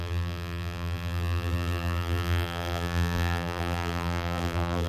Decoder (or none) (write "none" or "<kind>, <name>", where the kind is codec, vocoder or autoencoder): vocoder, BigVGAN v2